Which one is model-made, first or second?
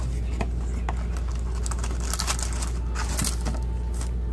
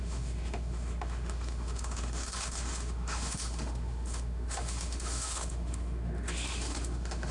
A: second